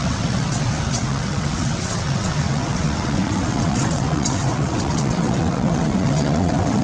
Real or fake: fake